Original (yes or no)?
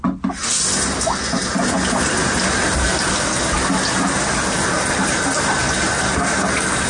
yes